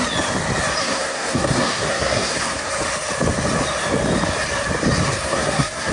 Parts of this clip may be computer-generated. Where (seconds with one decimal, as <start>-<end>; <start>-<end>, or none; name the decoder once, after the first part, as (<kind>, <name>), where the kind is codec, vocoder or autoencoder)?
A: 0.8-2.7 (codec, SNAC); 5.1-5.9